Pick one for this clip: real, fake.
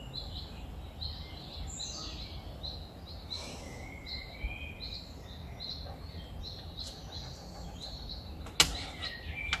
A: real